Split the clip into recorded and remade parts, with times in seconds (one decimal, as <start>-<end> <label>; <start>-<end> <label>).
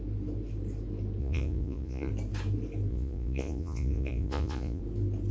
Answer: 0.0-1.2 recorded; 1.2-2.1 remade; 2.1-2.9 recorded; 2.9-4.8 remade; 4.8-5.3 recorded